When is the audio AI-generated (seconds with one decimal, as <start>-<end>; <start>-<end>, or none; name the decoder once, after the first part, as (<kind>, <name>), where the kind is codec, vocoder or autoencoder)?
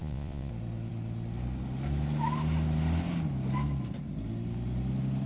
0.0-0.5 (vocoder, Vocos)